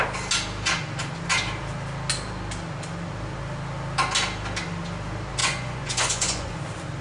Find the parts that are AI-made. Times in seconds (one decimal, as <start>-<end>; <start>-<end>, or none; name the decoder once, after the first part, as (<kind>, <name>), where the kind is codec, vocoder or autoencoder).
5.4-6.6 (vocoder, Vocos)